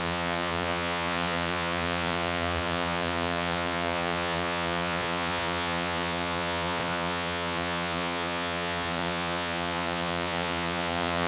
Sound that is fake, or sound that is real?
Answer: fake